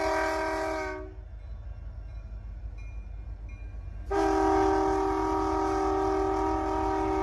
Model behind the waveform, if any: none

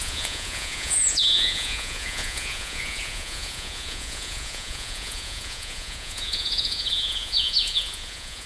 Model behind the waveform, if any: vocoder, Vocos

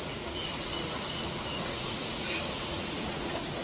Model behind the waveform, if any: vocoder, Vocos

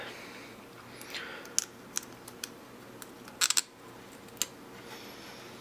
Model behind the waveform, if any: none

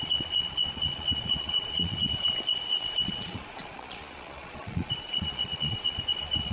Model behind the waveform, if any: vocoder, Vocos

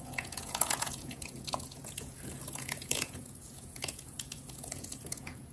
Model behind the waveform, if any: vocoder, Vocos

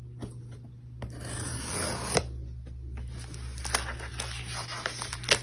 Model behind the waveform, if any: none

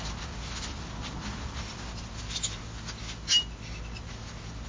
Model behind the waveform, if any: none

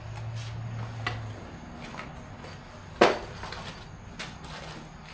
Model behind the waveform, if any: none